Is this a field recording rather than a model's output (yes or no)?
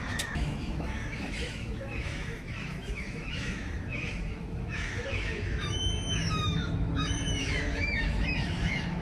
no